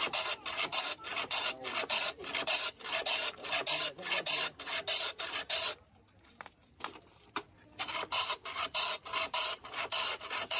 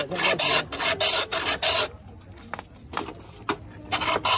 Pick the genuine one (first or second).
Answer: second